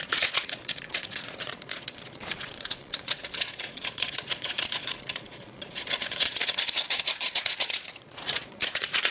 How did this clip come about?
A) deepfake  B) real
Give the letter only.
A